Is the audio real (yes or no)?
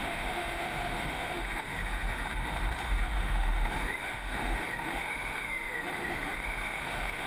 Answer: no